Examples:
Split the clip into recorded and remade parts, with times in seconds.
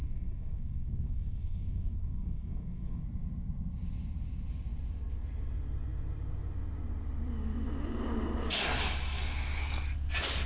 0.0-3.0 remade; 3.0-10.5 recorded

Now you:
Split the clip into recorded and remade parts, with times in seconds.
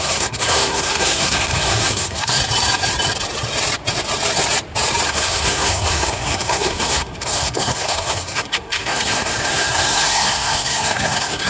0.0-2.4 remade; 2.4-5.1 recorded; 5.1-11.5 remade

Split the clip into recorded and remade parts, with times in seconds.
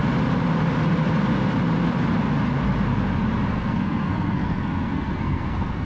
0.0-3.5 recorded; 3.5-5.8 remade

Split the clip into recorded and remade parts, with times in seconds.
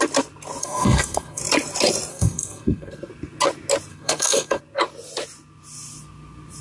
0.0-0.6 recorded; 0.6-1.4 remade; 1.4-2.1 recorded; 2.1-3.1 remade; 3.1-3.9 recorded; 3.9-4.6 remade; 4.6-6.6 recorded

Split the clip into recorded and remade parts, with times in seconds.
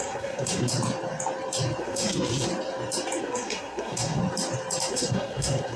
0.0-0.7 remade; 0.7-1.8 recorded; 1.8-2.5 remade; 2.5-3.2 recorded; 3.2-4.2 remade; 4.2-4.9 recorded; 4.9-5.8 remade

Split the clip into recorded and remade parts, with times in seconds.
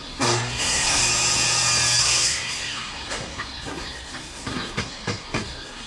0.0-1.0 remade; 1.0-2.0 recorded; 2.0-5.9 remade